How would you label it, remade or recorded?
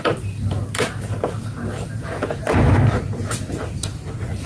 recorded